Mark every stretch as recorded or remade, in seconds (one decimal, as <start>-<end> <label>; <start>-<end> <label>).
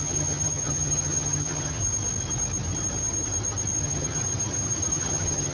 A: 0.0-1.8 remade; 1.8-3.8 recorded; 3.8-4.2 remade; 4.2-4.9 recorded; 4.9-5.5 remade